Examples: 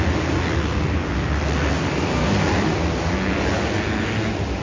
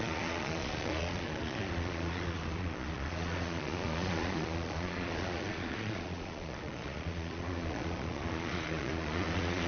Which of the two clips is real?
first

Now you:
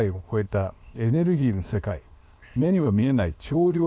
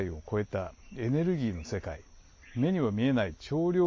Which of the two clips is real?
second